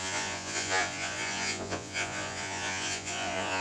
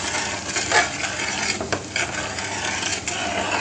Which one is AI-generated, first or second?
first